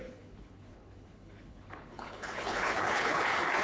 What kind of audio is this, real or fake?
fake